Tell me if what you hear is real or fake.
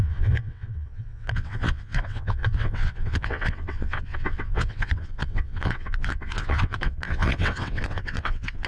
fake